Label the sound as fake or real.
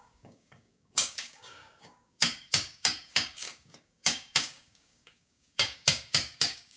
fake